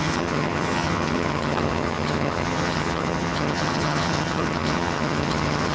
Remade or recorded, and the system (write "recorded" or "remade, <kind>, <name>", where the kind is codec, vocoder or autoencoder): remade, vocoder, HiFi-GAN